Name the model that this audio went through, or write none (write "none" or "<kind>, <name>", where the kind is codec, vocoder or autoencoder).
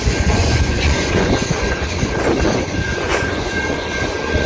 vocoder, Vocos